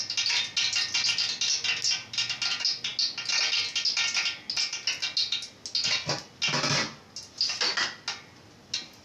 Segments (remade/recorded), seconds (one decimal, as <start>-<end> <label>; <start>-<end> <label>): 0.0-9.0 recorded